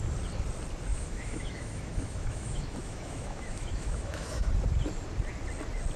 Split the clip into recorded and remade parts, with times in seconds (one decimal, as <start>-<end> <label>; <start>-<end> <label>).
0.0-0.9 recorded; 0.9-4.5 remade; 4.5-6.0 recorded